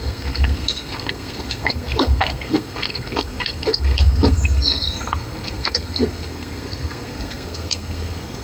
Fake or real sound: fake